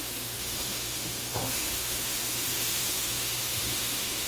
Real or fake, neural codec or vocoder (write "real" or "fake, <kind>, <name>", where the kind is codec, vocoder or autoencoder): fake, autoencoder, DAC-VAE